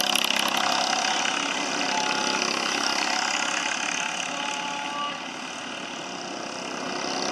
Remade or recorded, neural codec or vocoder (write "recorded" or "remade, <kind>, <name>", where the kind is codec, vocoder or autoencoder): recorded